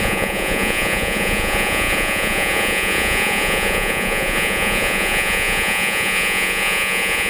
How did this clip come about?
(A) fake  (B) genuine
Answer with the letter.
A